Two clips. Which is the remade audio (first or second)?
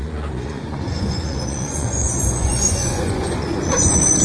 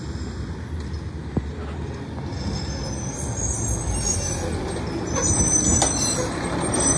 first